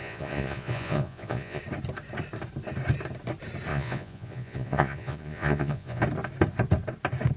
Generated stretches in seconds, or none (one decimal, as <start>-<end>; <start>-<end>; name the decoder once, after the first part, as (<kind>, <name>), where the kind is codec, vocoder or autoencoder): 0.0-1.6 (vocoder, Vocos); 3.7-6.0